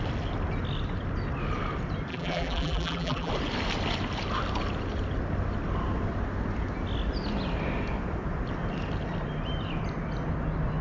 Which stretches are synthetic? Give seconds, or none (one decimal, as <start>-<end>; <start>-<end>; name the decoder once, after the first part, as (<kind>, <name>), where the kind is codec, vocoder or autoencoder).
2.1-3.3 (vocoder, BigVGAN v2)